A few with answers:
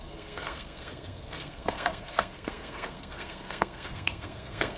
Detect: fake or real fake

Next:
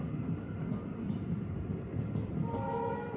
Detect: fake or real real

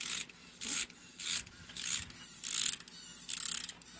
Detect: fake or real real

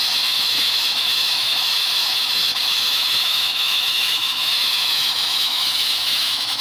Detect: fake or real fake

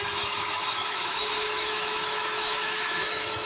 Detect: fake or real fake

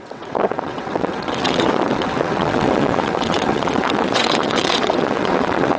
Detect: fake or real fake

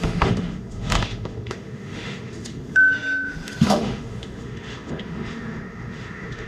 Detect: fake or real fake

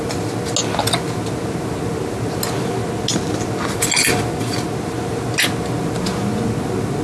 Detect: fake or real real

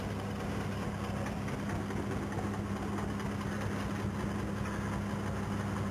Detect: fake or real real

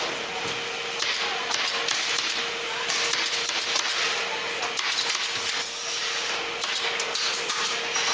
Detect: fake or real real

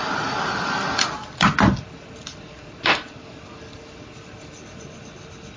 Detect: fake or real real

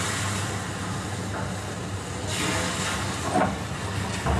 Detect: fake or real real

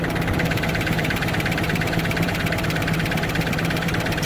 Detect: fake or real fake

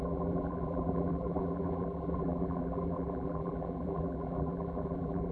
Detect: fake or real fake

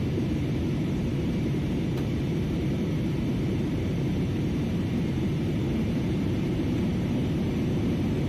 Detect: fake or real fake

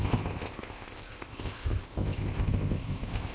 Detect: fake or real fake